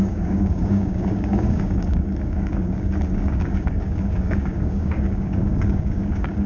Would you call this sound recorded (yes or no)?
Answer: no